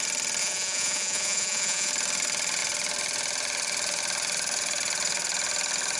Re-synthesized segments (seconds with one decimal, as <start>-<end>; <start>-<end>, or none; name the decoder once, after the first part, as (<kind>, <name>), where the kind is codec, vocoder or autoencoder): 0.4-1.9 (vocoder, Vocos)